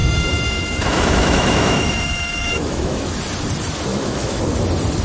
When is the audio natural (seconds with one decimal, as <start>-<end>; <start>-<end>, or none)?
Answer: 3.0-3.9; 4.4-5.0